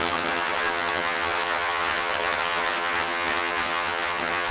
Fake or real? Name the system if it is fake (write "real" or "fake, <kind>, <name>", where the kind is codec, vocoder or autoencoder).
fake, vocoder, HiFi-GAN